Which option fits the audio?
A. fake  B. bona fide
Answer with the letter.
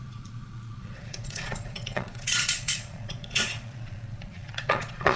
A